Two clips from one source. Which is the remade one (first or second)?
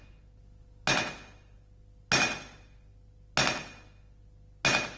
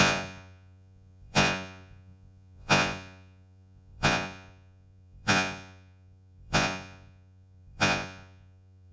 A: second